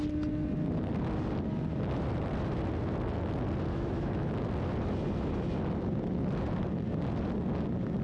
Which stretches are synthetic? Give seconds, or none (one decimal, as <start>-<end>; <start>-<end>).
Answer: 3.7-4.3